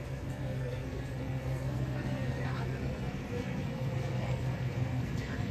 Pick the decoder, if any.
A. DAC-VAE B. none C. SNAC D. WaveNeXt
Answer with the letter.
C